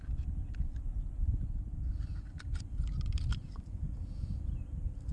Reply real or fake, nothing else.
real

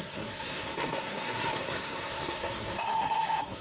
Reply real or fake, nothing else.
fake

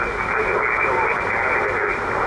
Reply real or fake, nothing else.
real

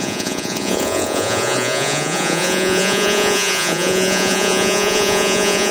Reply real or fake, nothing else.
fake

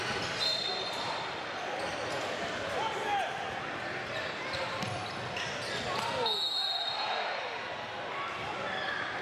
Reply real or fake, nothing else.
real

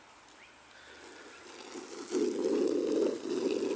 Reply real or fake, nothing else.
real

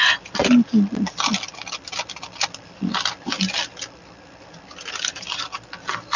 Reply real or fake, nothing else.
real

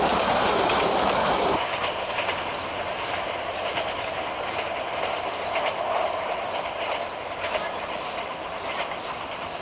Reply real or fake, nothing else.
real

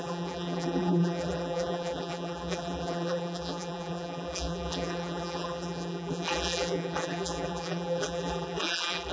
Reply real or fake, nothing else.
fake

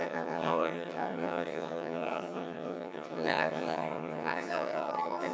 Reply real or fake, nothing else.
fake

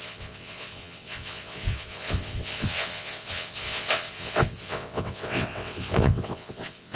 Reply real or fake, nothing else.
fake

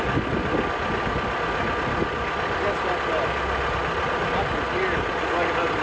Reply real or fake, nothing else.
real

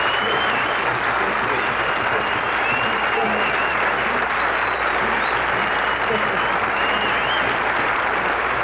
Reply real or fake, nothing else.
real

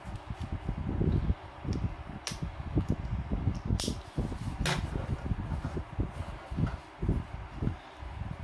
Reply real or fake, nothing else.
real